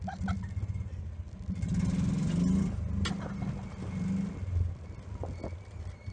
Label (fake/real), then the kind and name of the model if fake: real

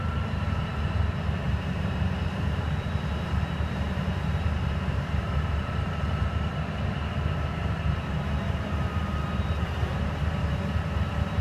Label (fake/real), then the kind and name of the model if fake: fake, vocoder, BigVGAN v2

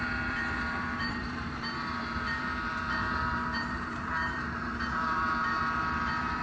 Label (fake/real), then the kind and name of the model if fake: fake, vocoder, BigVGAN v2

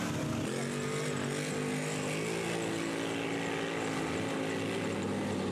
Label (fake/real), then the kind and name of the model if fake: real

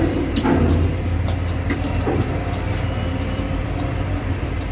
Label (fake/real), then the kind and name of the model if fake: fake, vocoder, BigVGAN v2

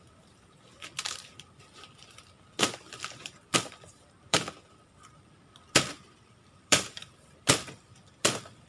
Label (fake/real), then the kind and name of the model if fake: fake, vocoder, BigVGAN v2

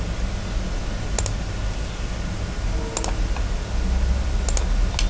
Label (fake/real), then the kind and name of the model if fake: real